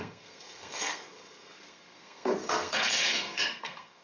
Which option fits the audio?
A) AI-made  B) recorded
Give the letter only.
A